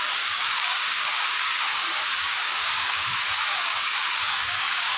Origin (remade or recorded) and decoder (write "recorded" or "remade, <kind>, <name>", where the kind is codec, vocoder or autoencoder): remade, codec, DAC